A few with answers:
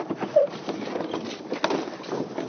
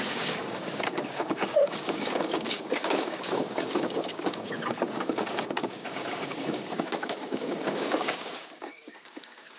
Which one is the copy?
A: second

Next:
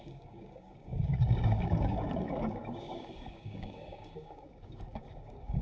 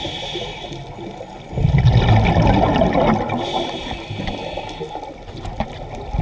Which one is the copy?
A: first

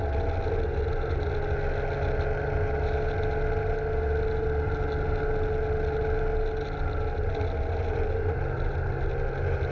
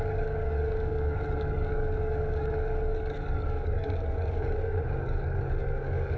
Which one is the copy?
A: second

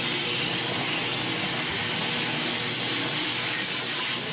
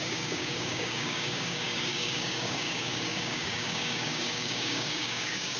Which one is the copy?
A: second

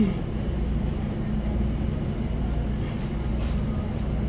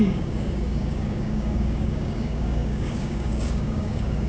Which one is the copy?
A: second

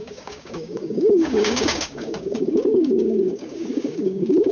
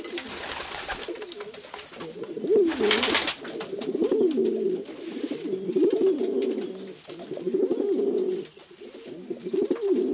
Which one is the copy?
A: first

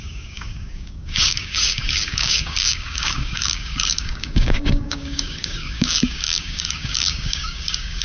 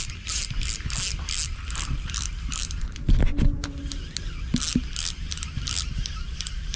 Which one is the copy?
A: first